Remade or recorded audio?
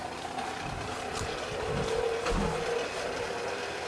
recorded